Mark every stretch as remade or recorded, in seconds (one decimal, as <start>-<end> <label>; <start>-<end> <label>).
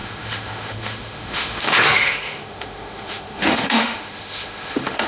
0.0-5.1 remade